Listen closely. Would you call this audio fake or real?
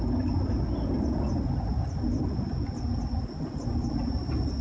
real